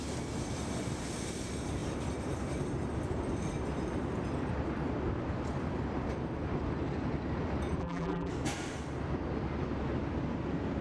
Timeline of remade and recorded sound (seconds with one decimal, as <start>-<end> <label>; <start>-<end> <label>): 0.0-7.8 recorded; 7.8-8.3 remade; 8.3-10.8 recorded